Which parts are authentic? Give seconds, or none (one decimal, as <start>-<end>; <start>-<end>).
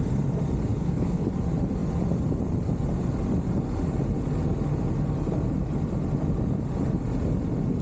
0.0-0.7; 1.3-7.8